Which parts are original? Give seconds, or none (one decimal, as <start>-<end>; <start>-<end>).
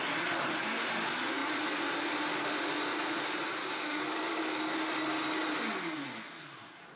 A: 0.0-3.6; 4.9-7.0